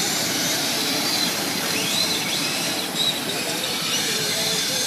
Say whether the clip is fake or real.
fake